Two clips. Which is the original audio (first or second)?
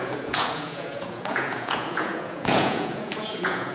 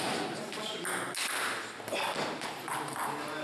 second